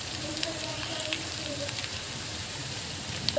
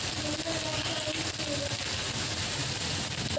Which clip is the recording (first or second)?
second